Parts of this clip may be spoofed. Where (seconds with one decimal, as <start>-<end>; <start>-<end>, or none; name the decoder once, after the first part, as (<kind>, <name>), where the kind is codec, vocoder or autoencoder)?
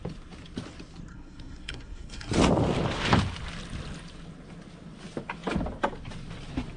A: 1.1-2.3 (codec, SNAC)